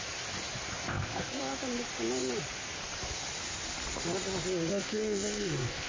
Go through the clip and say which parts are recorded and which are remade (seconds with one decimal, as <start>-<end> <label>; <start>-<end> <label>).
0.0-0.9 recorded; 0.9-1.4 remade; 1.4-4.7 recorded; 4.7-5.9 remade